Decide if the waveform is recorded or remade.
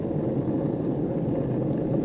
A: recorded